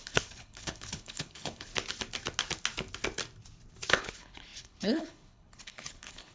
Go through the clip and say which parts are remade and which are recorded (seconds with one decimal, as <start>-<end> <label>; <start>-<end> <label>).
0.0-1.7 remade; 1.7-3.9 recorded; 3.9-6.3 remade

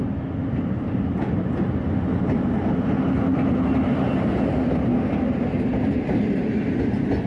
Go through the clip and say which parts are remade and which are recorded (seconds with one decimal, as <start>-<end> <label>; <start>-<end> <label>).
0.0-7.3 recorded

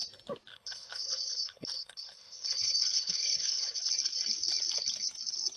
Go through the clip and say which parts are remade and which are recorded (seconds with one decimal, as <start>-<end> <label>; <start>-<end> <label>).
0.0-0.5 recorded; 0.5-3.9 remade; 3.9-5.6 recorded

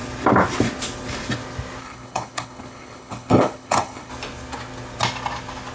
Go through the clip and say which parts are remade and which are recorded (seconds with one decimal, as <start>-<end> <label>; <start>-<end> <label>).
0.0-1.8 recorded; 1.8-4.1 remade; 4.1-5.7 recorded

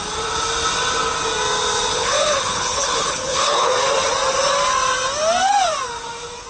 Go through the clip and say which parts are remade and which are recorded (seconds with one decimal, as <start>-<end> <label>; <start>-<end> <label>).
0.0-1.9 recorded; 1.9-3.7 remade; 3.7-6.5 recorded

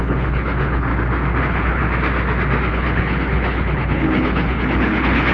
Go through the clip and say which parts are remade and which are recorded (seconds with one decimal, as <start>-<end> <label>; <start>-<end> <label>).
0.0-0.9 remade; 0.9-1.4 recorded; 1.4-1.8 remade; 1.8-2.7 recorded; 2.7-5.3 remade

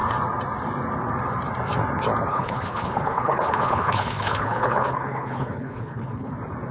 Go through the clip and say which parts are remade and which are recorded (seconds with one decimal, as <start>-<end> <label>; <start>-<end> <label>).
0.0-2.3 recorded; 2.3-6.3 remade; 6.3-6.7 recorded